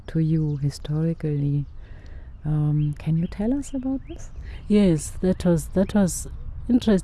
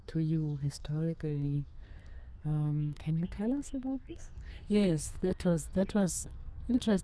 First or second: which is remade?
second